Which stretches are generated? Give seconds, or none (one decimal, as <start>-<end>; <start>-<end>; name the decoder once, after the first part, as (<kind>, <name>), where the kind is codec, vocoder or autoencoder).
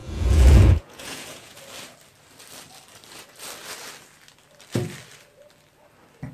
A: 0.0-1.6 (vocoder, Vocos)